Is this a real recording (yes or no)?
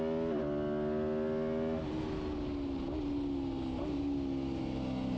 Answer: yes